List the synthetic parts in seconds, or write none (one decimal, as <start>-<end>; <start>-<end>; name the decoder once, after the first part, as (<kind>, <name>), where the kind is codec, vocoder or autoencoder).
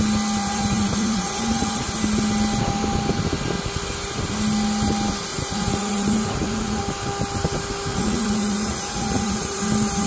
0.4-2.0 (vocoder, Vocos); 5.3-6.8; 7.9-9.6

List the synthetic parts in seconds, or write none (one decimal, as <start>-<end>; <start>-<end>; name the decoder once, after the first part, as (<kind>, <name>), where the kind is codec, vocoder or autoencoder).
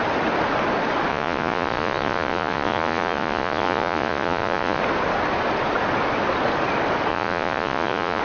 1.1-4.8 (vocoder, Vocos); 7.1-8.2